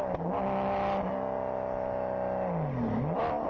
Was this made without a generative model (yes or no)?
yes